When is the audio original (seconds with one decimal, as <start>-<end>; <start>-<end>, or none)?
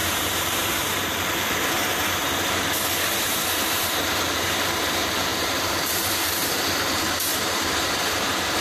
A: 2.2-3.2